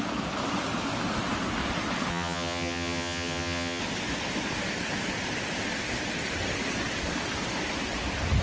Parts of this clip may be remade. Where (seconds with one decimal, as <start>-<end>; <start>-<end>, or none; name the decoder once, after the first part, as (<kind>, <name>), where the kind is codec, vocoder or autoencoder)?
2.1-3.8 (vocoder, HiFi-GAN)